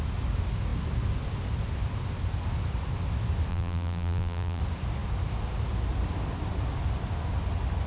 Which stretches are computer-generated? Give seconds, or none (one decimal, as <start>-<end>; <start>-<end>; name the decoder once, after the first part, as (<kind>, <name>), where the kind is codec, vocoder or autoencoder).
3.5-4.6 (vocoder, BigVGAN v2)